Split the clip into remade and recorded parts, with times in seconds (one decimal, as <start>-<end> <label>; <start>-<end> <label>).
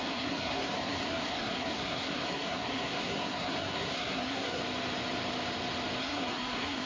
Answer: 0.0-4.6 remade; 4.6-6.0 recorded; 6.0-6.9 remade